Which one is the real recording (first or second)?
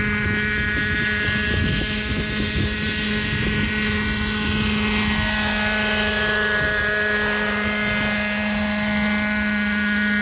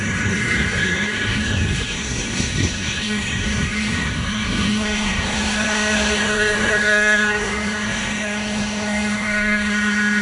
first